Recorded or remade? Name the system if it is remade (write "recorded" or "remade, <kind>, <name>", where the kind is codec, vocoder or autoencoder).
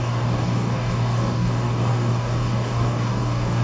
remade, codec, DAC